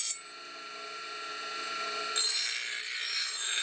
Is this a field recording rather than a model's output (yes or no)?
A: yes